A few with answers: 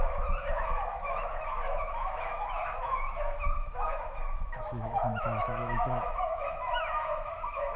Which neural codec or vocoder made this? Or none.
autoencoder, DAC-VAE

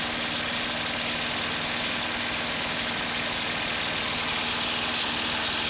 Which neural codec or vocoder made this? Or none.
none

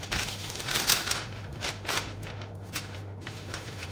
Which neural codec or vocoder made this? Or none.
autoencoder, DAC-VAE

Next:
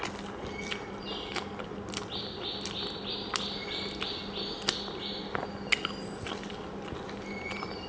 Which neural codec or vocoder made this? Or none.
none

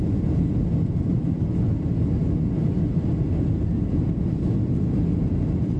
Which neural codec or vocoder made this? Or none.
none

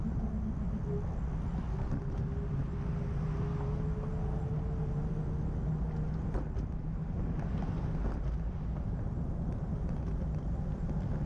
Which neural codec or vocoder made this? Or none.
none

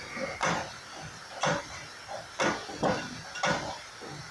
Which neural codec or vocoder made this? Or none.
none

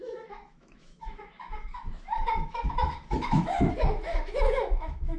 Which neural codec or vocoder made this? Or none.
autoencoder, DAC-VAE